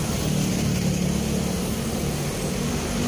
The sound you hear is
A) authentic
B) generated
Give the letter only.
A